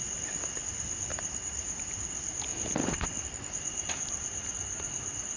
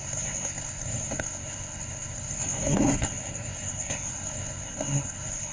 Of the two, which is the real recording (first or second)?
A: first